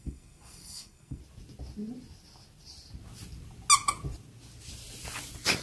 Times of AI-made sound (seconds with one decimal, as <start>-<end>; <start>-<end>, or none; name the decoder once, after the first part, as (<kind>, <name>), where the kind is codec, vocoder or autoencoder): 0.0-1.2 (codec, SNAC)